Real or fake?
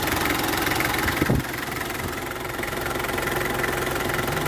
real